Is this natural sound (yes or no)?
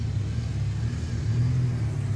yes